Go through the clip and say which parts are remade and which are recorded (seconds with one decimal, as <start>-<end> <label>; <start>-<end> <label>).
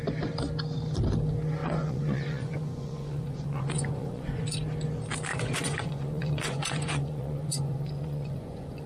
0.0-1.6 recorded; 1.6-4.4 remade; 4.4-5.3 recorded; 5.3-8.9 remade